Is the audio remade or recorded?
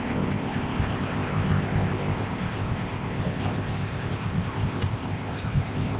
remade